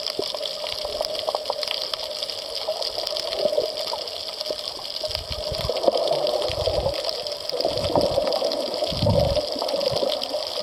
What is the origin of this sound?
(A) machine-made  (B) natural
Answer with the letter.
B